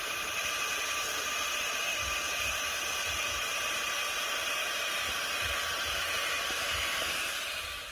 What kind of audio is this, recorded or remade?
remade